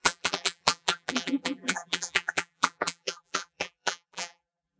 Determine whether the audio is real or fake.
fake